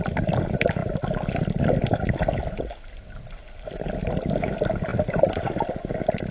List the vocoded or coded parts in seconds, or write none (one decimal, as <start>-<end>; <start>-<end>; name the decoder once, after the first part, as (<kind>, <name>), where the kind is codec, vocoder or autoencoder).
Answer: none